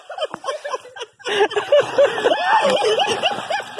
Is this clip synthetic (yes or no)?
no